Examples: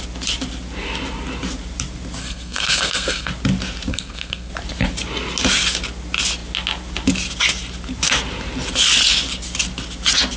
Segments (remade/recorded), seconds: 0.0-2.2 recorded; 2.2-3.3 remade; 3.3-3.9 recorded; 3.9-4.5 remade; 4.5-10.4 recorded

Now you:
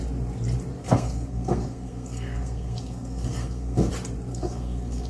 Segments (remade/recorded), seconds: 0.0-0.8 recorded; 0.8-3.9 remade; 3.9-4.3 recorded; 4.3-5.1 remade

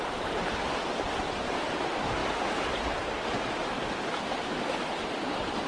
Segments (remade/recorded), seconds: 0.0-2.2 remade; 2.2-5.7 recorded

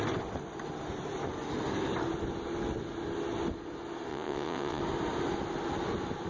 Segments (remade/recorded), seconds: 0.0-4.1 recorded; 4.1-4.8 remade; 4.8-6.3 recorded

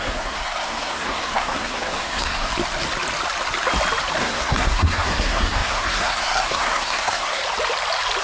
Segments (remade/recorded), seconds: 0.0-2.5 remade; 2.5-4.2 recorded; 4.2-7.4 remade; 7.4-8.2 recorded

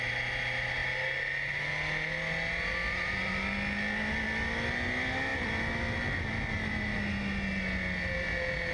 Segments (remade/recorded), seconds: 0.0-8.7 recorded

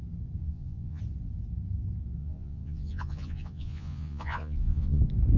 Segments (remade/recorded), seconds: 0.0-0.4 recorded; 0.4-1.0 remade; 1.0-2.2 recorded; 2.2-5.0 remade; 5.0-5.4 recorded